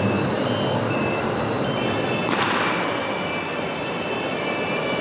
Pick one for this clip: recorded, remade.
remade